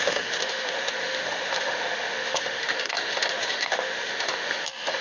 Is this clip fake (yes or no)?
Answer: yes